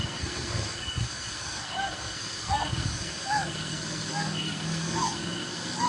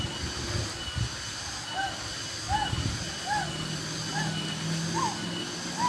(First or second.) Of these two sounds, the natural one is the second